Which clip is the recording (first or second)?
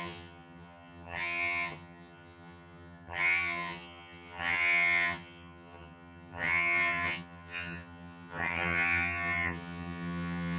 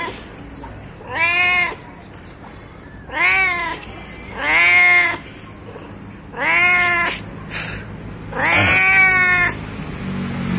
second